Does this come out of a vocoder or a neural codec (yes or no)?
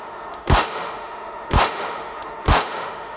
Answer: yes